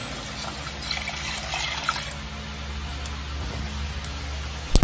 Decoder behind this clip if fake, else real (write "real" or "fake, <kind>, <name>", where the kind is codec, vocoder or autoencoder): real